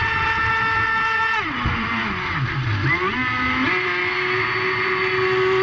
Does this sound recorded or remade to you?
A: recorded